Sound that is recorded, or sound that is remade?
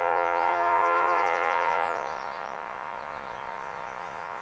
remade